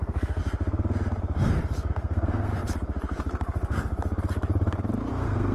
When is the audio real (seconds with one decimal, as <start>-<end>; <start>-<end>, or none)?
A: 0.4-1.9; 2.5-5.1